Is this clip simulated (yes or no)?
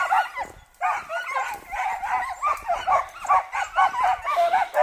no